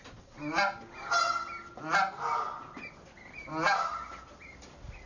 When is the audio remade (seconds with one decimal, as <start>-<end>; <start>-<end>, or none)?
none